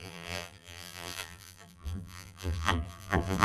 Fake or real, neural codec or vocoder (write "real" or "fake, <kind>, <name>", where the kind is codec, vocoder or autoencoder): fake, vocoder, BigVGAN v2